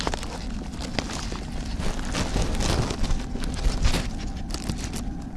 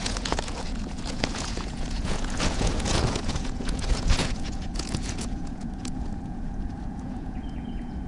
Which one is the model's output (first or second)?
second